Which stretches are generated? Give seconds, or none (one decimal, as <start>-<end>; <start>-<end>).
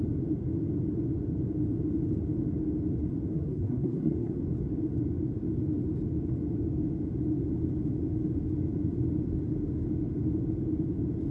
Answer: 3.3-4.4